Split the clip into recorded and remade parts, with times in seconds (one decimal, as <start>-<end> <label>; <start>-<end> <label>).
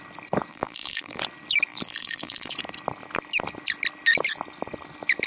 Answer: 0.0-0.5 recorded; 0.5-1.2 remade; 1.2-1.7 recorded; 1.7-2.5 remade; 2.5-5.3 recorded